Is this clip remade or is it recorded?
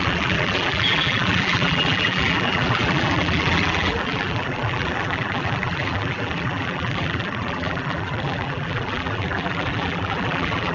remade